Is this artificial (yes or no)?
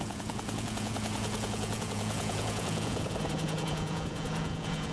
yes